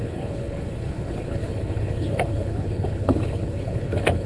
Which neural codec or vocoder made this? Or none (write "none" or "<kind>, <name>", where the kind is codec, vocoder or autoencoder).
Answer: codec, HILCodec